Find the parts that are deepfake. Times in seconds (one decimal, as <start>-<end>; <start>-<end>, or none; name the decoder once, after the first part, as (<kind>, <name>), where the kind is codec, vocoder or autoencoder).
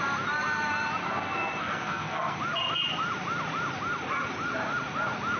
1.0-2.4 (codec, SNAC)